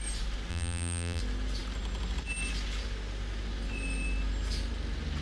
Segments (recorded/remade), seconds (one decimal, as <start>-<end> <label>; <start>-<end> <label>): 0.0-0.5 recorded; 0.5-1.2 remade; 1.2-5.2 recorded